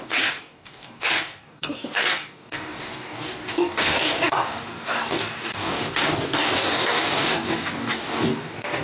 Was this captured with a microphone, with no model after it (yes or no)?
no